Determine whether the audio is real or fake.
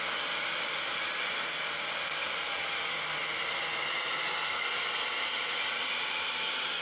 fake